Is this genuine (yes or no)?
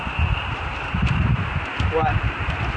yes